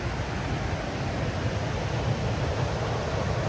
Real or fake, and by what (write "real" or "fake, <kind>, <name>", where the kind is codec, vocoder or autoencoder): real